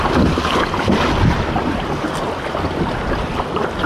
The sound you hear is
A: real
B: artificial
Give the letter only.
B